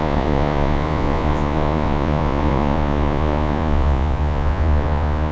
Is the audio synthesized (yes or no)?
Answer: yes